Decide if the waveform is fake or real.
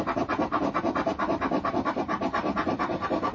real